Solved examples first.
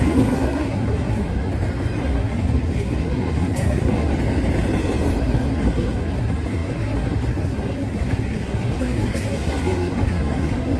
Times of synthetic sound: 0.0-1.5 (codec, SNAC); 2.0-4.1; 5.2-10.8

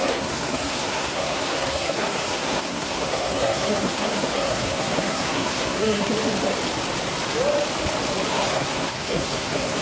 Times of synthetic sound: 0.0-6.1 (codec, SNAC); 8.3-9.8